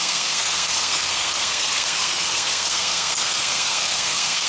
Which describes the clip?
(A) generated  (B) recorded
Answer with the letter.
A